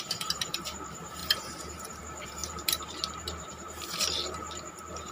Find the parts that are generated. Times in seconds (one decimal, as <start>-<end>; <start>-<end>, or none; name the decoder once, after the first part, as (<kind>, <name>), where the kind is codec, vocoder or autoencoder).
0.0-2.4 (vocoder, BigVGAN v2)